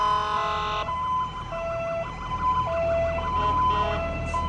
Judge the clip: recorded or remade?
recorded